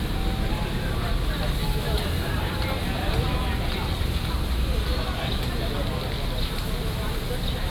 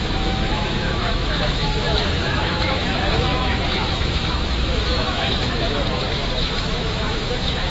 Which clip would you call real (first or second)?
first